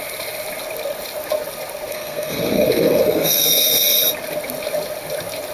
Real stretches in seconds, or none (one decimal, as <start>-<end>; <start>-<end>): 0.0-1.9; 3.8-5.5